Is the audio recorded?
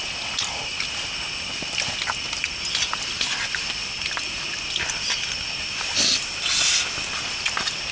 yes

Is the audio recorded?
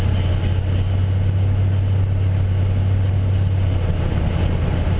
yes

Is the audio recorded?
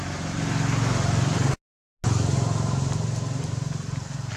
yes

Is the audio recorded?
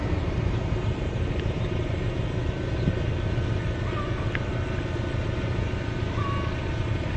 yes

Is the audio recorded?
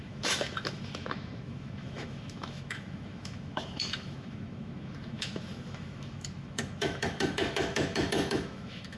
no